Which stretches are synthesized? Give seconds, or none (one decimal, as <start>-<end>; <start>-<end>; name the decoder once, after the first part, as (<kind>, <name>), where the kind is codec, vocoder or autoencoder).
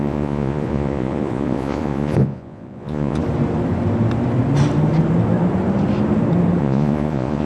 0.0-3.2 (vocoder, Vocos); 6.6-7.5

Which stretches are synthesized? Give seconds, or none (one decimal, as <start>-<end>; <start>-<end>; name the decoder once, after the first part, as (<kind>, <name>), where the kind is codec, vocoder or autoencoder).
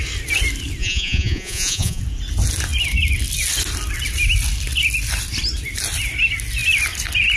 0.8-2.0 (vocoder, Vocos)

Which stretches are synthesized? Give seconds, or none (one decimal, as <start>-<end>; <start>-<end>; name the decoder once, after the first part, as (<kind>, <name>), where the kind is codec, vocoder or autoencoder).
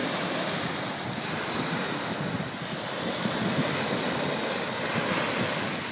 none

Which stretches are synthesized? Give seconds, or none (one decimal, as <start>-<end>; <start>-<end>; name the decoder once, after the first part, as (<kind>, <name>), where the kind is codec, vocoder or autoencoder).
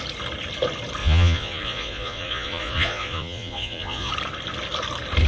1.0-4.1 (vocoder, Vocos)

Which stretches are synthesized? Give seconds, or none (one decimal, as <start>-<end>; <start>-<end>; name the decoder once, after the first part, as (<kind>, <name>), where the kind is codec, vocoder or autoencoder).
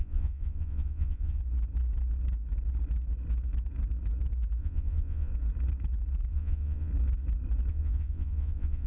0.0-1.4 (vocoder, Vocos); 4.6-5.3; 6.3-6.9; 7.7-8.9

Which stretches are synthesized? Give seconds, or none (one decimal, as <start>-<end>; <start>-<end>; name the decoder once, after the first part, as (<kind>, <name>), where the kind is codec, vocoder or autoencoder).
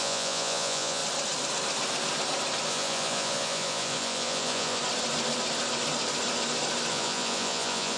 0.0-1.0 (vocoder, Vocos); 2.7-4.8; 6.9-8.0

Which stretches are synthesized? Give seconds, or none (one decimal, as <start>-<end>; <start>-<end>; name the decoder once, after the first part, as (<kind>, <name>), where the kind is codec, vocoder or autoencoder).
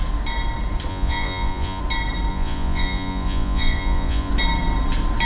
0.9-1.8 (vocoder, Vocos); 2.3-4.3